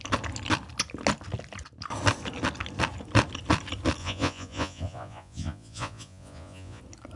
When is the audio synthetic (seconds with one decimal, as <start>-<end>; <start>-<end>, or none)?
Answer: 4.0-6.8

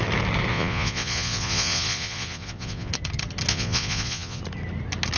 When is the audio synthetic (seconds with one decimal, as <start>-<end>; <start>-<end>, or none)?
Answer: 0.5-2.9; 3.5-4.4

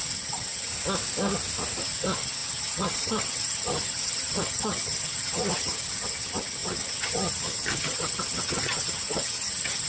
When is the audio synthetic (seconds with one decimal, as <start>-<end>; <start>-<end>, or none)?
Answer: 0.0-0.7; 1.8-9.9

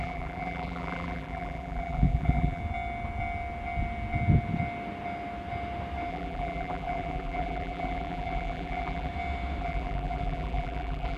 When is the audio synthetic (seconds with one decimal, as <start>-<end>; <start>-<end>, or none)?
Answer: 0.0-2.6; 6.1-9.1; 9.6-11.2

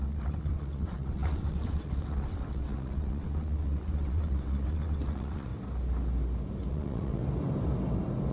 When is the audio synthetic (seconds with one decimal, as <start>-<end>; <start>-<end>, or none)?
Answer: 0.0-5.5; 6.7-7.2

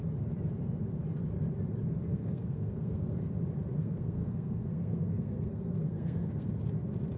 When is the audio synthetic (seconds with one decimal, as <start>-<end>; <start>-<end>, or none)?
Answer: 2.1-3.3; 3.8-6.5

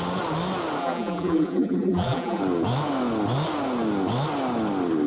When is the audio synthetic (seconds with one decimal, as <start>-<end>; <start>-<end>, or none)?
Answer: 0.8-2.4

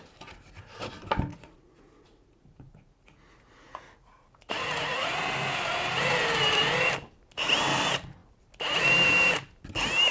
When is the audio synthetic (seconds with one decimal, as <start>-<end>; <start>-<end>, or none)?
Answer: 1.3-5.1